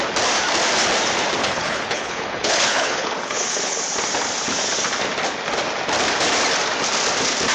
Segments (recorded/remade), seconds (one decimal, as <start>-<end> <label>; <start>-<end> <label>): 0.0-1.4 recorded; 1.4-3.8 remade; 3.8-7.5 recorded